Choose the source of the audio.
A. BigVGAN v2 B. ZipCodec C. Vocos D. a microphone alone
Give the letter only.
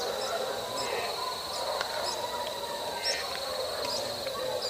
D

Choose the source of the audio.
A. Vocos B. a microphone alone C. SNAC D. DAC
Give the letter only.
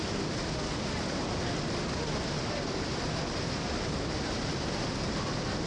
B